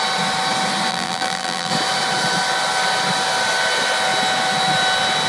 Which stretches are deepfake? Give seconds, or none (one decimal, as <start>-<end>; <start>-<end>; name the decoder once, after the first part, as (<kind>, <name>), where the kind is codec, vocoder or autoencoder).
0.9-1.7 (vocoder, BigVGAN v2)